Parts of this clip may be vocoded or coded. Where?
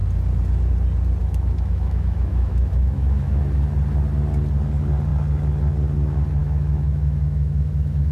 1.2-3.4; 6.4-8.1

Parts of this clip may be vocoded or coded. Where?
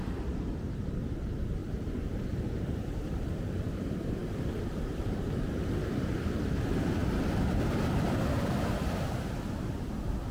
0.0-7.0; 8.5-10.3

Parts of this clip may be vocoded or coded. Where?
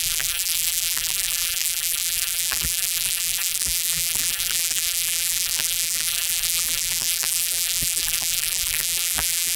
0.0-9.6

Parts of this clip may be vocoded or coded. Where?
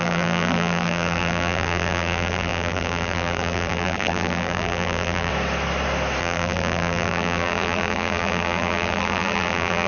0.0-5.3; 6.2-9.9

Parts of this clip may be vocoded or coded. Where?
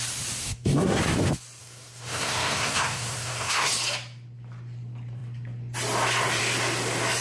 0.4-1.0; 1.6-3.7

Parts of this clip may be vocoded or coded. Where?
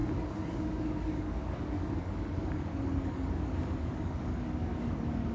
0.6-5.3